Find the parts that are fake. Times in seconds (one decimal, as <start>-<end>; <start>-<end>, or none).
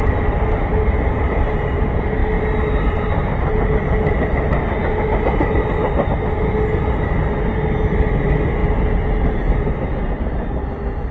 none